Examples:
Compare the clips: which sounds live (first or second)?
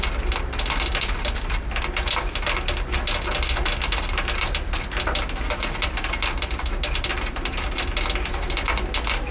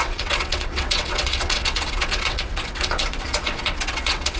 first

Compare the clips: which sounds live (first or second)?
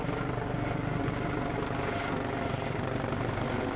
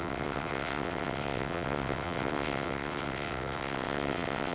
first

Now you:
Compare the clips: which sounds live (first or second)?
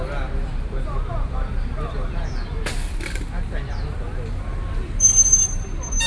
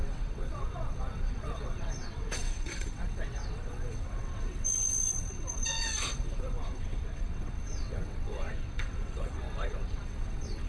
first